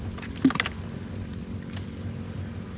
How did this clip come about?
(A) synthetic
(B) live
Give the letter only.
B